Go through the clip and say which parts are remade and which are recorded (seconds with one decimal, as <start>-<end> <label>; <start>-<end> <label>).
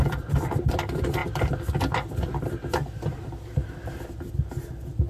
0.0-5.1 remade